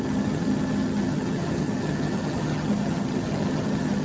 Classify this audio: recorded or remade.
remade